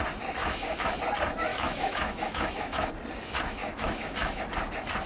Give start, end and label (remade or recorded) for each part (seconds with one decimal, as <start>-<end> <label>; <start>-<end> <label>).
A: 0.0-0.4 recorded; 0.4-0.9 remade; 0.9-1.5 recorded; 1.5-2.9 remade; 2.9-3.6 recorded; 3.6-4.4 remade; 4.4-5.1 recorded